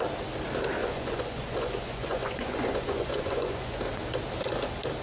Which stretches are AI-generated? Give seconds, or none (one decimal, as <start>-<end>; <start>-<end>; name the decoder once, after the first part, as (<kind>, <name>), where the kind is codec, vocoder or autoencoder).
0.8-3.8 (vocoder, Vocos)